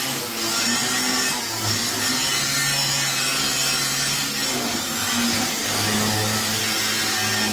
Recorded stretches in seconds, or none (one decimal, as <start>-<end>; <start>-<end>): 0.0-5.6; 6.6-7.5